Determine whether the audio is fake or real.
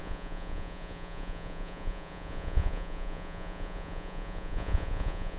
fake